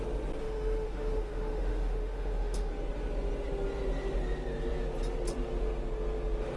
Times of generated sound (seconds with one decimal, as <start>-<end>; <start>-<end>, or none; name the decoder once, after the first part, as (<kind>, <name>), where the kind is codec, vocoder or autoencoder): 0.4-2.7 (autoencoder, DAC-VAE)